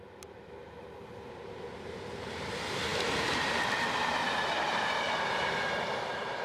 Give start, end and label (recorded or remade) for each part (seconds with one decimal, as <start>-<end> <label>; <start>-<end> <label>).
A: 0.0-2.9 recorded; 2.9-3.8 remade; 3.8-6.4 recorded